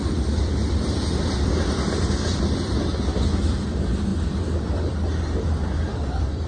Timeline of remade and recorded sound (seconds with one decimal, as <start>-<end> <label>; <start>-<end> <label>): 0.0-6.5 recorded